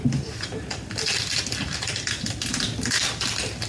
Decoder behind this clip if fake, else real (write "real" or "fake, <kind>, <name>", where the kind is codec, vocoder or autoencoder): real